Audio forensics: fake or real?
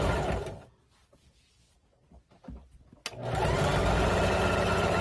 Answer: real